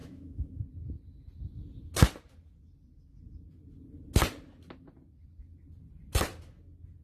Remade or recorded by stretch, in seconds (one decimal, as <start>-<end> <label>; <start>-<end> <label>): 0.0-0.6 remade; 0.6-7.0 recorded